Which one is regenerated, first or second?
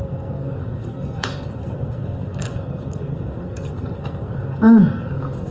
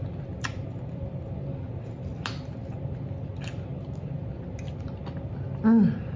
first